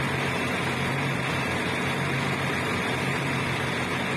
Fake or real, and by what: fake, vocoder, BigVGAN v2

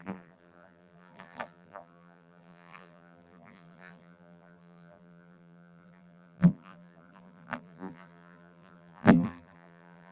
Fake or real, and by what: fake, vocoder, BigVGAN v2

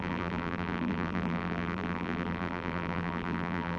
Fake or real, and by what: fake, vocoder, BigVGAN v2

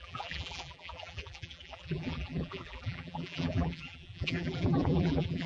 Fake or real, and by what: fake, vocoder, BigVGAN v2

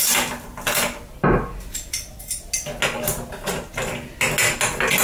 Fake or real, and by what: real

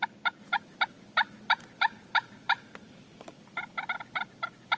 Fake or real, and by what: fake, vocoder, BigVGAN v2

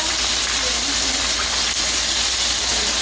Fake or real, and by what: real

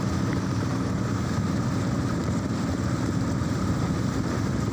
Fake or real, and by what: fake, vocoder, BigVGAN v2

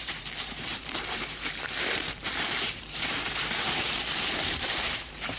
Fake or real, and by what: fake, vocoder, BigVGAN v2